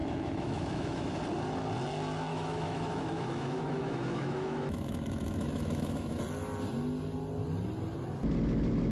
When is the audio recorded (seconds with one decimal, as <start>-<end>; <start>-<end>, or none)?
1.2-2.3; 6.2-8.9